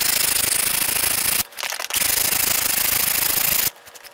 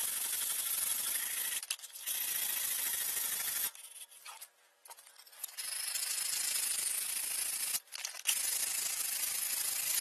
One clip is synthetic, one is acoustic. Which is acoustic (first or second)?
first